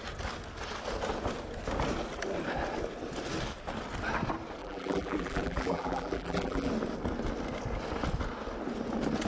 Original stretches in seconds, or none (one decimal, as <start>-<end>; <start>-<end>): 0.0-4.6; 6.7-9.3